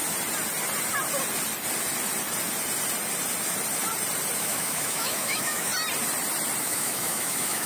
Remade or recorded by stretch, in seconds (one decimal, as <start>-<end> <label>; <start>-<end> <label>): 0.0-4.4 recorded; 4.4-5.7 remade; 5.7-6.6 recorded; 6.6-7.7 remade